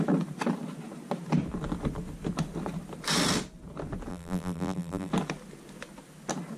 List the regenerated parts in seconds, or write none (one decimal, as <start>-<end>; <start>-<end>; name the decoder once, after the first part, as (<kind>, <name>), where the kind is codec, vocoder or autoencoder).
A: 4.1-5.1 (vocoder, BigVGAN v2)